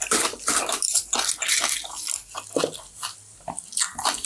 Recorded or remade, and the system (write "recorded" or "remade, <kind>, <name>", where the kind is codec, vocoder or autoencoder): recorded